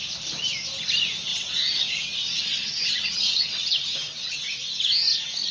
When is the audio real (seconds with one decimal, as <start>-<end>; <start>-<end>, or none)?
0.0-1.3; 4.6-5.5